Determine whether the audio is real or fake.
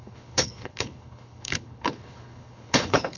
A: fake